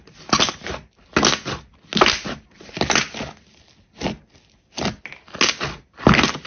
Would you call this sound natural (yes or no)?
yes